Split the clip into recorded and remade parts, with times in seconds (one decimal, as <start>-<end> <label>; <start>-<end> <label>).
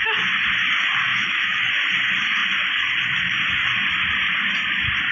0.0-1.1 recorded; 1.1-1.7 remade; 1.7-5.1 recorded